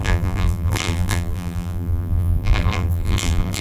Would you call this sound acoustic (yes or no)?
no